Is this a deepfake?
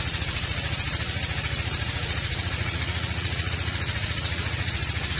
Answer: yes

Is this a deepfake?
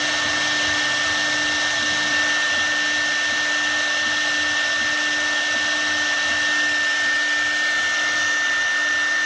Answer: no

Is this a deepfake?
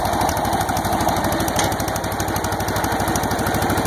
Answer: no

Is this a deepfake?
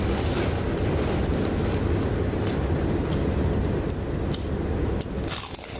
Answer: no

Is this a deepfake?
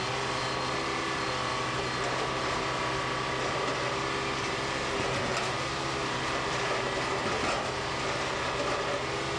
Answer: no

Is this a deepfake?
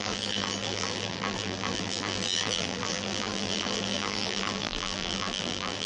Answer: yes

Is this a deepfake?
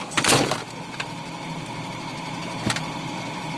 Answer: yes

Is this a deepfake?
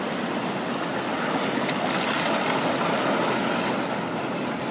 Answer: no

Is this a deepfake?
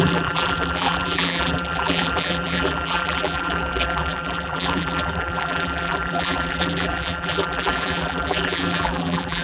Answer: yes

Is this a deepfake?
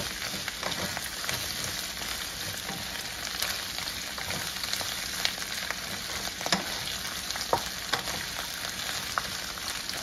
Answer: no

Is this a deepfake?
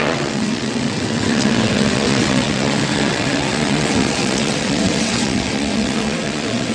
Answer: yes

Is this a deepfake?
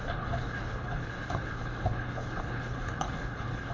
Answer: yes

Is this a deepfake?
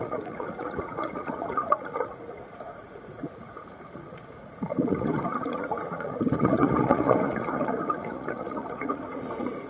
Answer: yes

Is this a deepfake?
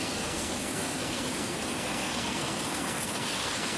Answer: yes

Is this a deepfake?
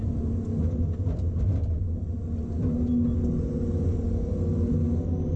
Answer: no